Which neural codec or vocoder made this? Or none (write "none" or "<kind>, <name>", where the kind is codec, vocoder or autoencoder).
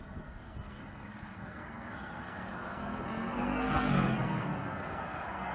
codec, SNAC